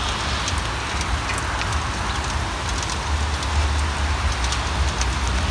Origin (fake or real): real